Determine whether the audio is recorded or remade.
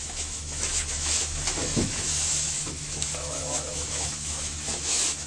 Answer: remade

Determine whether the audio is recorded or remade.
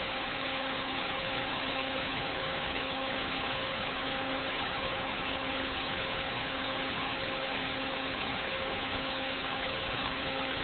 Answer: remade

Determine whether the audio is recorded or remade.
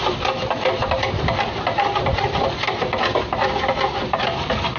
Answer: recorded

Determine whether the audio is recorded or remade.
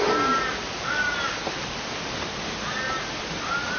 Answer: recorded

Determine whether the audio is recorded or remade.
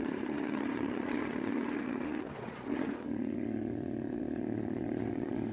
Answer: remade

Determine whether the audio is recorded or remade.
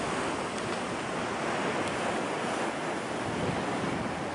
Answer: recorded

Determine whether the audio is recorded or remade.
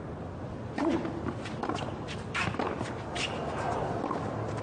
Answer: remade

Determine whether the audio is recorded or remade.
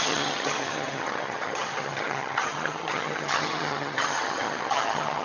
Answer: remade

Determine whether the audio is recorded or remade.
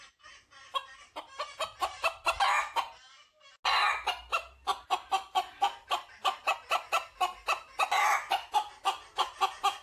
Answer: recorded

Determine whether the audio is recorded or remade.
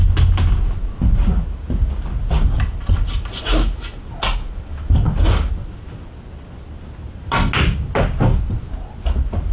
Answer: recorded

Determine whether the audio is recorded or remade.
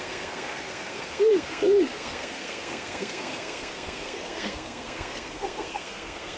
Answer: remade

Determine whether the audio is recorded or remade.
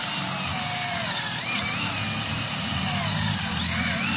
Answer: recorded